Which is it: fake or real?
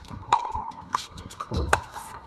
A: fake